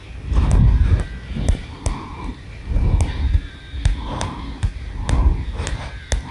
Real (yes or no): yes